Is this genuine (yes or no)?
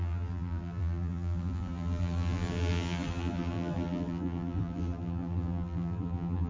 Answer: no